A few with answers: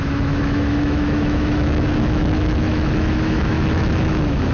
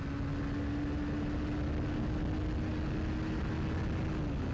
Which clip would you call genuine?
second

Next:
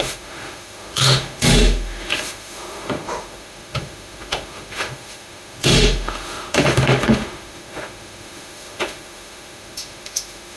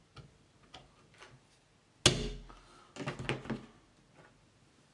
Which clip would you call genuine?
second